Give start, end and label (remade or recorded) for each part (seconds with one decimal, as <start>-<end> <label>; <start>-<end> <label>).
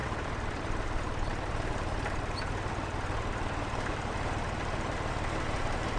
0.0-6.0 remade